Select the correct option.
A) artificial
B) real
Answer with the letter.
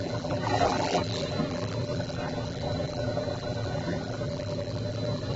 A